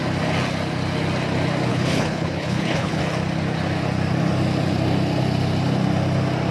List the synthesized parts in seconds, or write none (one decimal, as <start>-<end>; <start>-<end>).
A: 1.7-3.0